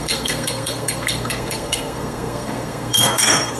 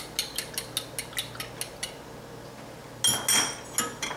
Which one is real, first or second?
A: second